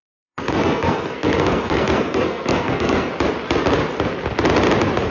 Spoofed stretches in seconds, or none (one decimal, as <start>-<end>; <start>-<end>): 0.0-3.1